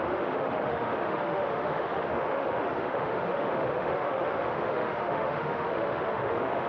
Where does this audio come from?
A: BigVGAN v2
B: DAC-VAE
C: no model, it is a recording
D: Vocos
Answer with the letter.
B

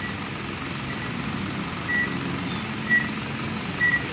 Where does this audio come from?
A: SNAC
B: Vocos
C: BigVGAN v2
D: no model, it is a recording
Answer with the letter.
D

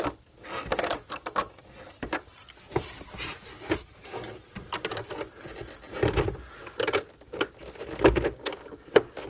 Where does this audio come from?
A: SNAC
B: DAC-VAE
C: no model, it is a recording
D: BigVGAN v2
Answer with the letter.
C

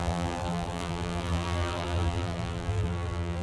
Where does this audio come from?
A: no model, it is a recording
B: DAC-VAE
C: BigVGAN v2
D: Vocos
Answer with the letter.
C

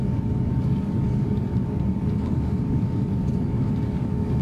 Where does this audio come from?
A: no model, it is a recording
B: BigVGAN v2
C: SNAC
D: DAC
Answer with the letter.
D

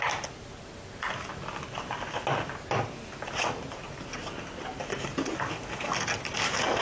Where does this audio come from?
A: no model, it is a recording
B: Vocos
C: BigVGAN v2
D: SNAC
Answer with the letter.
A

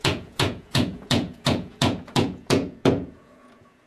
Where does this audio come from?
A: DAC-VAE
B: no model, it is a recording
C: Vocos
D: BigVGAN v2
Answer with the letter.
C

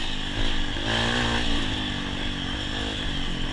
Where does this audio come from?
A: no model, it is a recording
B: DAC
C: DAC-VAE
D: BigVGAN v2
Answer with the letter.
A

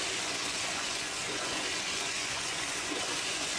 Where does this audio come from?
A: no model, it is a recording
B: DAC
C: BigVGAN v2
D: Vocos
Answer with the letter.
D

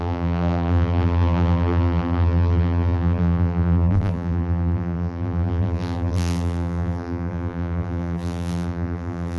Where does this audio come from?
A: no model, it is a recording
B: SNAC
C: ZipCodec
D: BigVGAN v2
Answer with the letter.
D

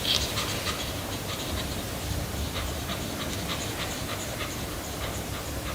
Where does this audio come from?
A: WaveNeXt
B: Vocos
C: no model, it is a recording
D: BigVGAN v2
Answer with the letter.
C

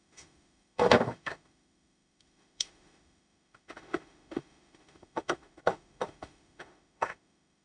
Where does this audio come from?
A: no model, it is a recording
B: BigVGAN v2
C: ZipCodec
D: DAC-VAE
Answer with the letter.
D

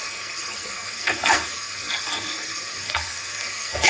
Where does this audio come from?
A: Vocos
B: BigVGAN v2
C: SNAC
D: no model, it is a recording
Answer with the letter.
C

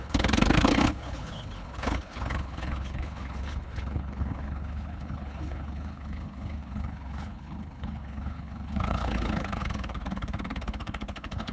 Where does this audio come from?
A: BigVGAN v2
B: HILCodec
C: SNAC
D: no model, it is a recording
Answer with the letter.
B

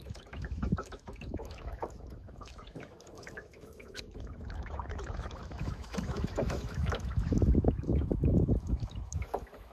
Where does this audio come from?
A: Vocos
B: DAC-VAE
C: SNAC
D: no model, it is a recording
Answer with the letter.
B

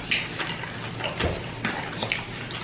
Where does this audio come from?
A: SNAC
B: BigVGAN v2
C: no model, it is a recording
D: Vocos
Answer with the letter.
C